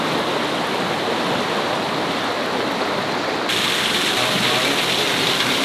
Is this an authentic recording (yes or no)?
yes